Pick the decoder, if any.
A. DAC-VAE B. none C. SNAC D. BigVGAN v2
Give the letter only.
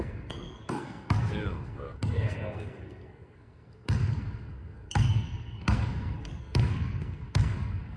C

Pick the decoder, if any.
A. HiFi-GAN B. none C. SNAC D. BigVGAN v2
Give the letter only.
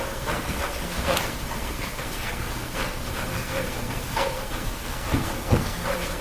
C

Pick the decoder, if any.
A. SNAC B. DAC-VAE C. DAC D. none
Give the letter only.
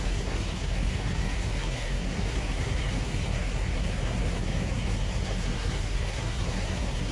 A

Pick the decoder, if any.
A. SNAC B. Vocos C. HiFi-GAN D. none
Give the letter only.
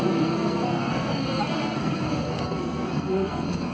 A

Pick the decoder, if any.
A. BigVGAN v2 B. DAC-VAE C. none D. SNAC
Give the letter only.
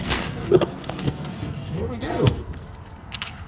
D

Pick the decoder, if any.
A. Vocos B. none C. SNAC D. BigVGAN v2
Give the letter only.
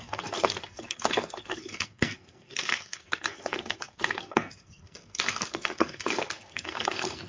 C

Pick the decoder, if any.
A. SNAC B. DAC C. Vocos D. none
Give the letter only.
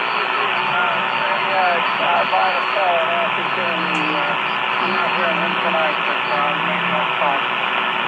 D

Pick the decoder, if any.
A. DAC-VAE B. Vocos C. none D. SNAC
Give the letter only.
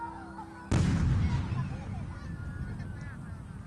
C